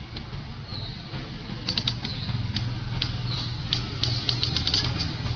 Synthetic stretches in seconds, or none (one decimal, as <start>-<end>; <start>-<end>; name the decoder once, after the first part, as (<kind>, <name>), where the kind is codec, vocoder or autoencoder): none